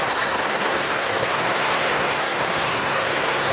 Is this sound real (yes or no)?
no